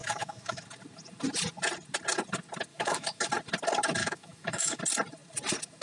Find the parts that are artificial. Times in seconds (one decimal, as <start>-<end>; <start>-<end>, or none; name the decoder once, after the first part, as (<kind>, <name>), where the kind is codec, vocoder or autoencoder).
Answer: 0.0-0.6 (autoencoder, DAC-VAE); 2.7-3.3; 4.0-4.8